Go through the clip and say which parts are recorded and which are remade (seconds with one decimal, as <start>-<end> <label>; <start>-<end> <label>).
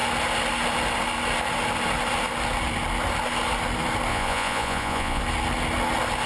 0.0-4.1 recorded; 4.1-5.2 remade; 5.2-6.3 recorded